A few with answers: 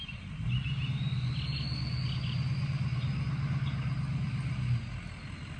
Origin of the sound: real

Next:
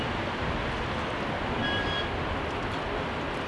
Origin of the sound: real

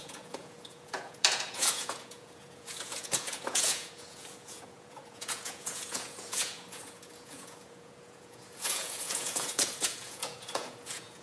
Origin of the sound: fake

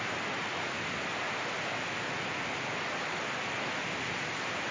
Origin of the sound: real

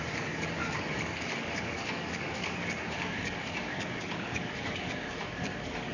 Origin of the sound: fake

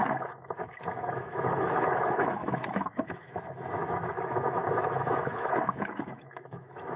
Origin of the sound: fake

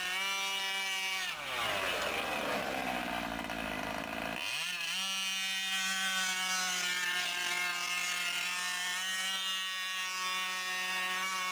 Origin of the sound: real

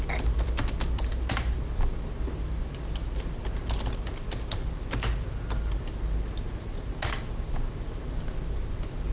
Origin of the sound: real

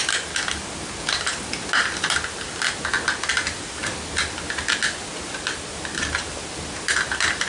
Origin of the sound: real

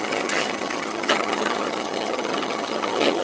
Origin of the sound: fake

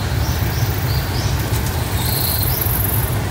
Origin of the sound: real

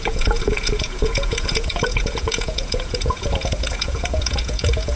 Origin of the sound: fake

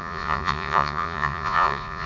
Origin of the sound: fake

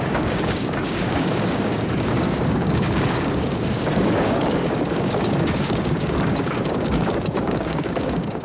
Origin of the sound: fake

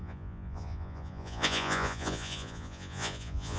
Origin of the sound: fake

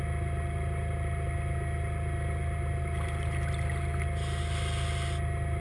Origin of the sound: real